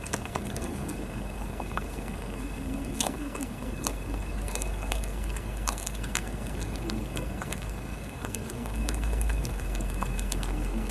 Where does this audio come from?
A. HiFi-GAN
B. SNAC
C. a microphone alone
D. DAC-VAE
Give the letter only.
B